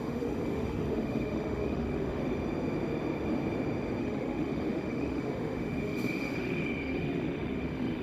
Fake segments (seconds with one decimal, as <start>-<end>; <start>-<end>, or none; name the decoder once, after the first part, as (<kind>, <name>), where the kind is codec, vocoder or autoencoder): 0.0-2.2 (autoencoder, DAC-VAE); 4.0-8.0